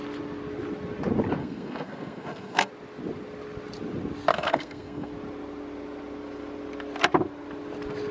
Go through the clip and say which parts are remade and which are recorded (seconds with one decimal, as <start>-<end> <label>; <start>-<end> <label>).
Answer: 0.0-1.4 recorded; 1.4-2.7 remade; 2.7-4.3 recorded; 4.3-5.1 remade; 5.1-8.1 recorded